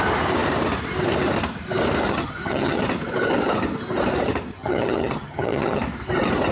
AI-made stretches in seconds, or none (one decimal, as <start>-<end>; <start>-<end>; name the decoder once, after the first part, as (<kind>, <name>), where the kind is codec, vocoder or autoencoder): 2.1-2.8 (vocoder, HiFi-GAN); 4.5-5.8